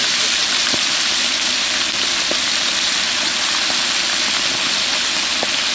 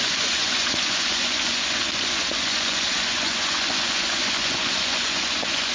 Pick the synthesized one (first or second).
second